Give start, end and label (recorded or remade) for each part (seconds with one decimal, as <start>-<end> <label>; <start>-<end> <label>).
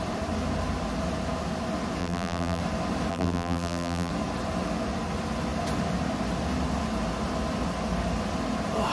0.0-2.0 recorded; 2.0-2.6 remade; 2.6-3.1 recorded; 3.1-4.1 remade; 4.1-8.9 recorded